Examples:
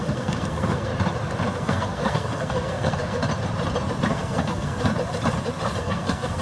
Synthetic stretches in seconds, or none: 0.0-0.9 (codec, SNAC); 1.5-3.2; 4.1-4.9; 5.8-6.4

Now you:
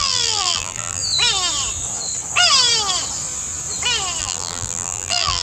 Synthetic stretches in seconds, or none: 0.0-1.0 (vocoder, BigVGAN v2); 4.2-5.4

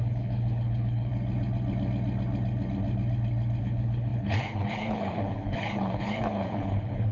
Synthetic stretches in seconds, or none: 0.0-1.1 (codec, HILCodec); 3.6-7.1

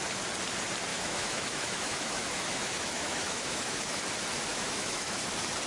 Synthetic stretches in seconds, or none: 0.9-4.0 (autoencoder, DAC-VAE); 4.5-5.2

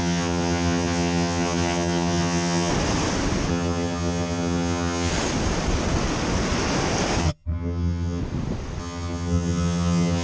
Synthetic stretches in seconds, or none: 0.0-2.7 (vocoder, HiFi-GAN); 3.5-5.1; 7.2-8.2; 8.8-10.2